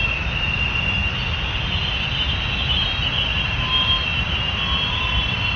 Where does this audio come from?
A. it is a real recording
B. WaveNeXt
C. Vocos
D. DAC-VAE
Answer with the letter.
A